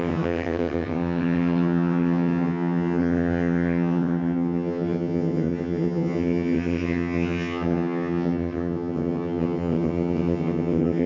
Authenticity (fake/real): fake